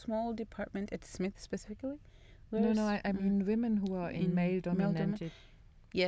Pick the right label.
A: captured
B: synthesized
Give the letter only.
A